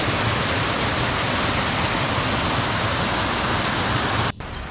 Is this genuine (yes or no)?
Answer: yes